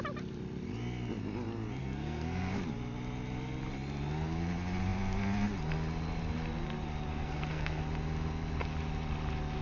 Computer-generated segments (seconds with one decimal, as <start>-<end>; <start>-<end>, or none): 1.8-2.6; 7.1-7.8